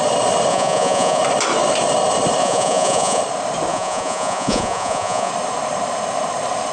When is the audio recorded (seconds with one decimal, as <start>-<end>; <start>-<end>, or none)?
0.0-0.5; 1.2-2.4; 3.2-3.7; 5.3-6.7